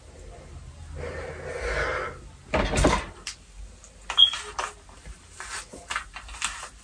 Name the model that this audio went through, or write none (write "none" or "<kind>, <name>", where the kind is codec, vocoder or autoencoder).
none